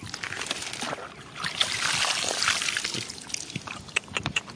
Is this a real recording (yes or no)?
yes